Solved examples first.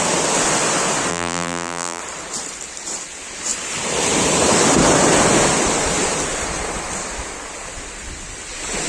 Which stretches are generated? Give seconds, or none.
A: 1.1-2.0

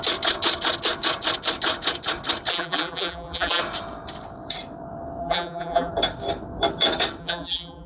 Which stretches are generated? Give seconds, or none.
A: 2.5-3.6; 5.2-5.9; 7.2-7.9

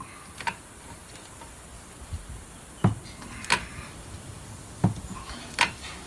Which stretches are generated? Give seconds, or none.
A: none